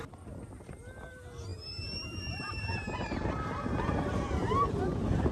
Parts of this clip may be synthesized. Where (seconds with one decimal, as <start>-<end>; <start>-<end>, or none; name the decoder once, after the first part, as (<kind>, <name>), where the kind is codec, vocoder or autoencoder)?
1.5-4.7 (vocoder, BigVGAN v2)